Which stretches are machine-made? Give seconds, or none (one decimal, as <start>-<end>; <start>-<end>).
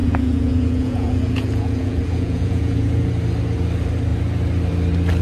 0.0-3.1